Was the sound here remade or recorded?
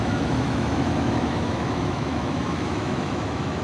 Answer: remade